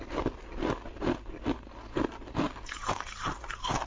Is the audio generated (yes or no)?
no